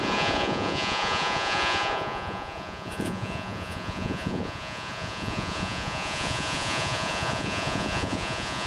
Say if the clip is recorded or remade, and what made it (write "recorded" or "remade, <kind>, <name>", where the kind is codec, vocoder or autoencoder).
remade, vocoder, Vocos